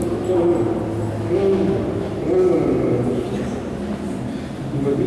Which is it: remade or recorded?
recorded